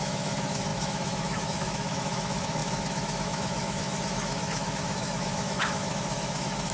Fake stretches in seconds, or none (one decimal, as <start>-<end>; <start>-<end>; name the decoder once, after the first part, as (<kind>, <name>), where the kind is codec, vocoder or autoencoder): 0.0-6.7 (autoencoder, DAC-VAE)